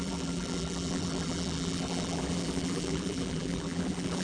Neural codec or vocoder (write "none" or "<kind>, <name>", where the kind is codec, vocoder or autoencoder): vocoder, BigVGAN v2